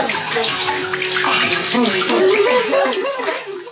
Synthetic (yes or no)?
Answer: no